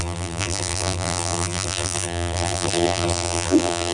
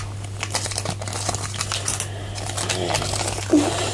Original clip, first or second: second